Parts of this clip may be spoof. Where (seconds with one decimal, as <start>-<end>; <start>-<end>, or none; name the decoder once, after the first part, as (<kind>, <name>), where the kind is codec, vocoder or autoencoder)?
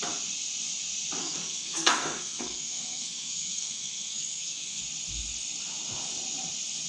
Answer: 1.2-4.8 (codec, SNAC)